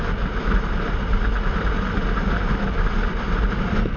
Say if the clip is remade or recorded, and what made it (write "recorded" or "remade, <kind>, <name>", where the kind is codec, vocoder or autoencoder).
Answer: recorded